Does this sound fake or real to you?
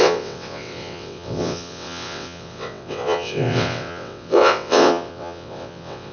fake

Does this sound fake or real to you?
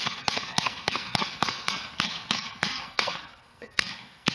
fake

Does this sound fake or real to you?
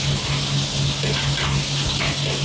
real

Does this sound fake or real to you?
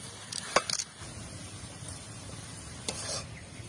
real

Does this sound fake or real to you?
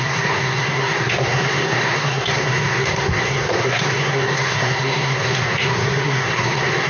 fake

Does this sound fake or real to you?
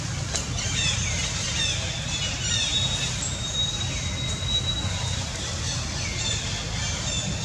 real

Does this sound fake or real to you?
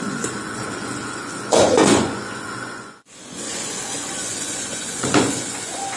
fake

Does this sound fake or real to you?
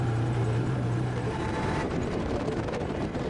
fake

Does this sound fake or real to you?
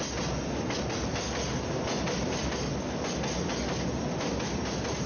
real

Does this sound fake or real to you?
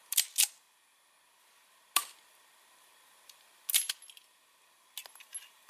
real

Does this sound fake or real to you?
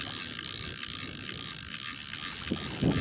real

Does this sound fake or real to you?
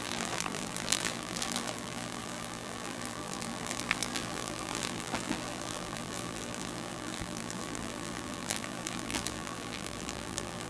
fake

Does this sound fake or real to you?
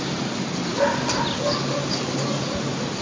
real